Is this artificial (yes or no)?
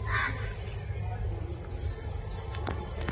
no